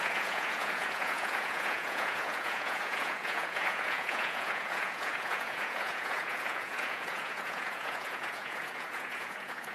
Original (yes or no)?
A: no